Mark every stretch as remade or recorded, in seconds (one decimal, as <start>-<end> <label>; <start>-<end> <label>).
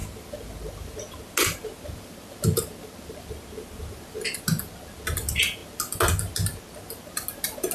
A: 0.0-7.7 recorded